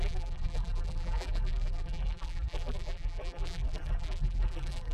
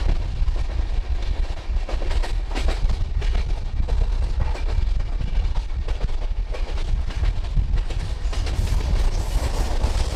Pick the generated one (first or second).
first